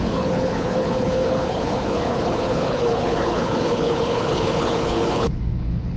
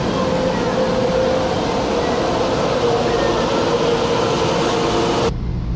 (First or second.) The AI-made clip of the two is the first